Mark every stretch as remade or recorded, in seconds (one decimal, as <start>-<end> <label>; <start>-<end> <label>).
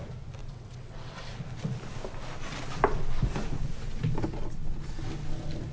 0.0-0.4 recorded; 0.4-1.3 remade; 1.3-5.7 recorded